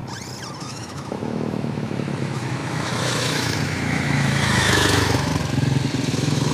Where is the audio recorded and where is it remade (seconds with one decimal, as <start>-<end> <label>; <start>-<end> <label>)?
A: 0.0-0.6 recorded; 0.6-5.3 remade; 5.3-6.1 recorded; 6.1-6.5 remade